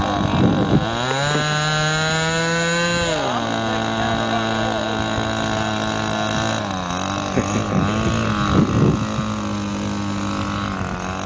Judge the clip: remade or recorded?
recorded